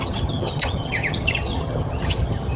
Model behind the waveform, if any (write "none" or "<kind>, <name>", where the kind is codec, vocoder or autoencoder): vocoder, HiFi-GAN